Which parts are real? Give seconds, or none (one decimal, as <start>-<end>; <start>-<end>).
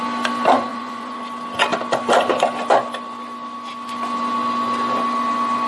0.0-0.7; 1.2-5.7